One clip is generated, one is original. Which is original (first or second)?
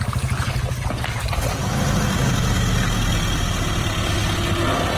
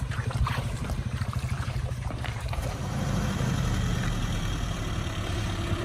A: first